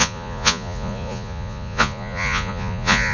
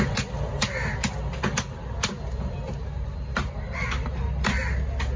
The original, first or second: second